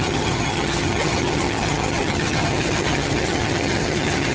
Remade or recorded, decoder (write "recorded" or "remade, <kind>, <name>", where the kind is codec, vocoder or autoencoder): remade, vocoder, HiFi-GAN